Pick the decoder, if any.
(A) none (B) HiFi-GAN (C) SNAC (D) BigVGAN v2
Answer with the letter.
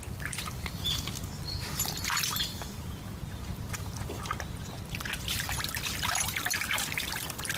A